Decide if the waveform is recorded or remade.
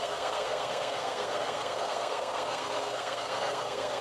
remade